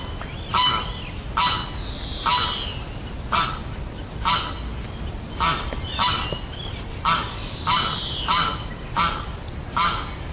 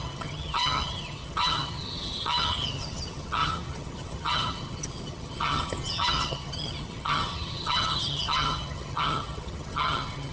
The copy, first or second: second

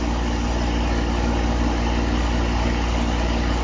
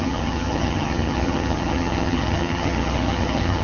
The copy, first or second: second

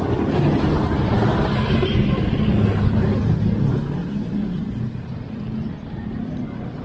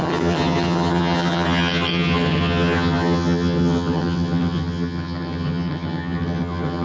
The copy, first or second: second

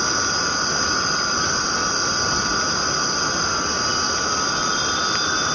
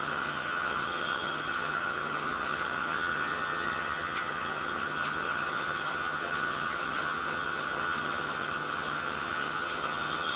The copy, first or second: second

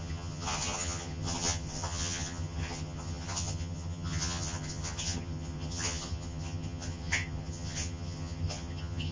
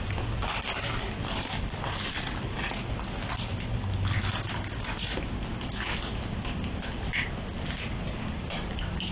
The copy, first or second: first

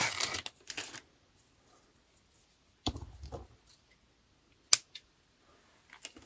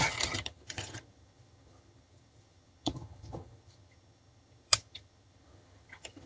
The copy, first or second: second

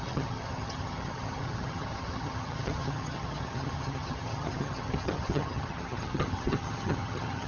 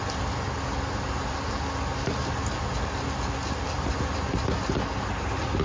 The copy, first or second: first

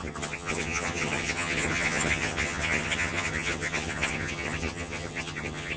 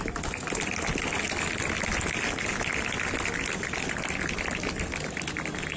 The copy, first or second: first